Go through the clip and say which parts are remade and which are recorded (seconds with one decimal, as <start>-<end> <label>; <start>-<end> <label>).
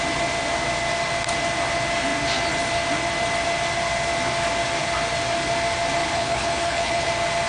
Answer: 0.0-6.0 recorded; 6.0-7.1 remade; 7.1-7.5 recorded